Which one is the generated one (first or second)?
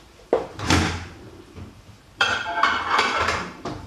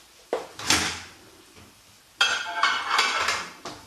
first